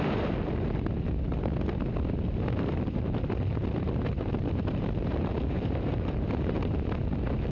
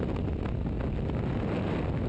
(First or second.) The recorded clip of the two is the second